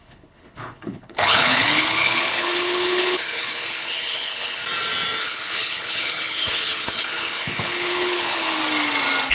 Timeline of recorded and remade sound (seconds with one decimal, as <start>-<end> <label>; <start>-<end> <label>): 0.0-4.6 remade; 4.6-5.2 recorded; 5.2-8.6 remade; 8.6-9.3 recorded